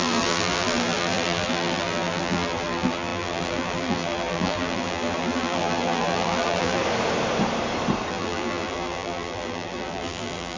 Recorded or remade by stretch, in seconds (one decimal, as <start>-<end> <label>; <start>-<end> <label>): 0.0-6.8 remade; 6.8-8.1 recorded; 8.1-10.6 remade